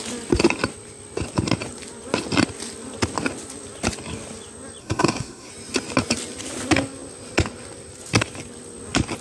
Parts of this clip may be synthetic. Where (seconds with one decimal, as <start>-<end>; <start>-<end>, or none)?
4.8-5.5